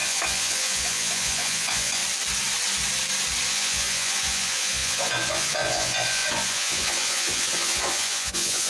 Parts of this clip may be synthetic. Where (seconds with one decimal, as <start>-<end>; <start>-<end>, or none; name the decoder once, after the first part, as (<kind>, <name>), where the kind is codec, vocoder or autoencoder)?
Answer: 0.0-2.0 (vocoder, Vocos); 3.5-8.7